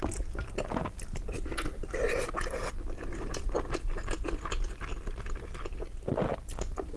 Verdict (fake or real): real